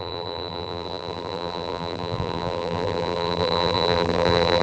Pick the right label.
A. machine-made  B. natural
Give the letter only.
A